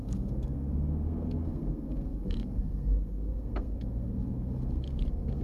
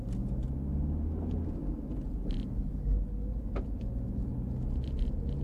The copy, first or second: first